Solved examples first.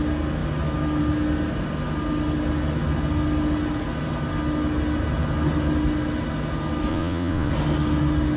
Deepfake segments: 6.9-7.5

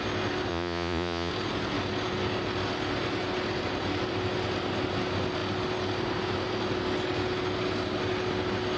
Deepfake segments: 0.5-1.3

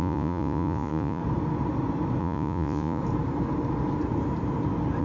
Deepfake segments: 0.0-1.2; 2.2-3.0

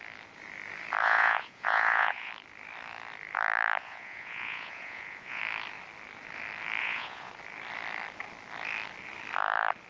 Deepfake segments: 1.0-2.3; 3.8-5.4; 6.8-7.3

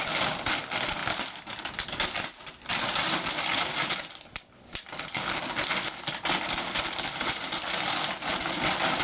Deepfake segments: none

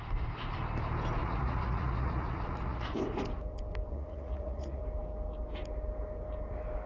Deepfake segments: 1.2-3.0; 3.9-4.8